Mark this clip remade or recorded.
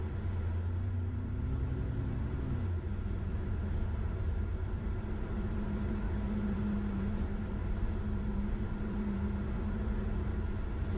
remade